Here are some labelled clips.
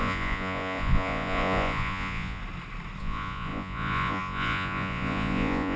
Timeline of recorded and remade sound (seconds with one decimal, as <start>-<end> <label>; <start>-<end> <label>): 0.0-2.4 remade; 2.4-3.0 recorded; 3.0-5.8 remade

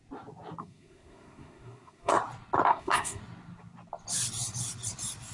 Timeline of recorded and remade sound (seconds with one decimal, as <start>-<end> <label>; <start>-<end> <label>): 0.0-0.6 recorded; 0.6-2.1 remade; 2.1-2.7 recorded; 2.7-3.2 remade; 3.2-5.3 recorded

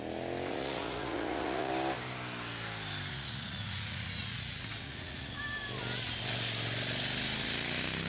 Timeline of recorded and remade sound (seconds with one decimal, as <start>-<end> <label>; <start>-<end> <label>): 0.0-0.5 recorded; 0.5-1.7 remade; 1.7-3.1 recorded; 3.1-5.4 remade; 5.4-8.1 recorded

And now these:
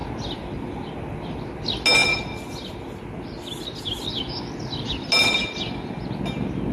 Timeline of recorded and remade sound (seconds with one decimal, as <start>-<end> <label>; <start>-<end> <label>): 0.0-6.7 recorded

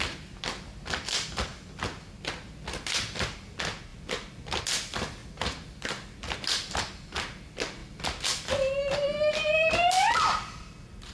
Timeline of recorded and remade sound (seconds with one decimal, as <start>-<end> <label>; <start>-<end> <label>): 0.0-3.9 recorded; 3.9-4.6 remade; 4.6-5.2 recorded; 5.2-6.8 remade; 6.8-7.8 recorded; 7.8-11.1 remade

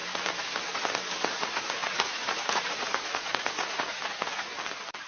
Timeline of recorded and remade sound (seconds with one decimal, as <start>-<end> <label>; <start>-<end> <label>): 0.0-1.3 recorded; 1.3-4.4 remade; 4.4-5.1 recorded